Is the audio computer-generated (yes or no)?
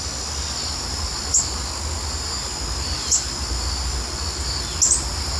no